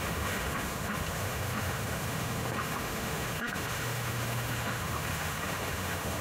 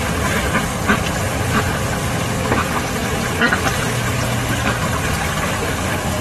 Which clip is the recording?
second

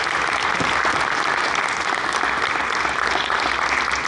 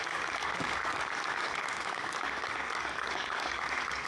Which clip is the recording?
first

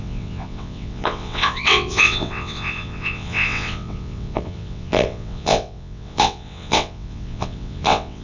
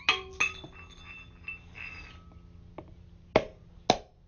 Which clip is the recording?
second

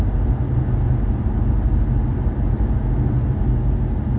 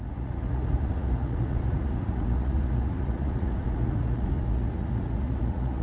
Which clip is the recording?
first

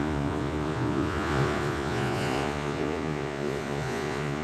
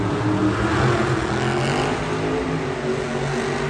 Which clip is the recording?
second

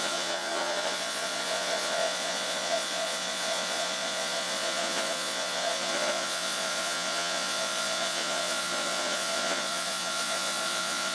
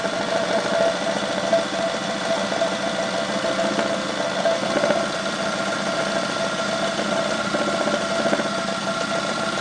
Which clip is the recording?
second